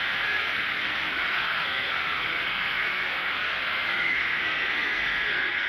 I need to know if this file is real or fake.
fake